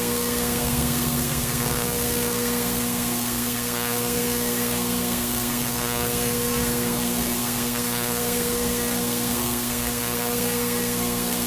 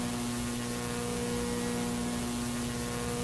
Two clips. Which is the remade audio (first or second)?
first